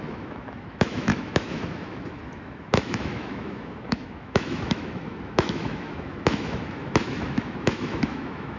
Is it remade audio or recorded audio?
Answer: remade